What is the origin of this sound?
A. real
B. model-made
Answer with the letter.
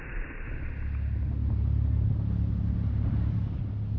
A